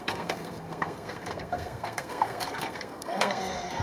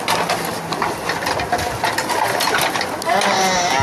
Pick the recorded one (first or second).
second